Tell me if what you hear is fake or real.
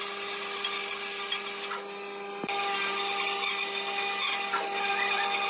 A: real